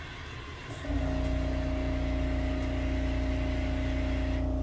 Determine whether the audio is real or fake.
real